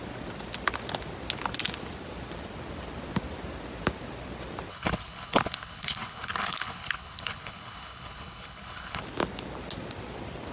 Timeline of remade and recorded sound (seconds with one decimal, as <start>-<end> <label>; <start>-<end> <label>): 0.0-4.7 recorded; 4.7-9.0 remade; 9.0-10.5 recorded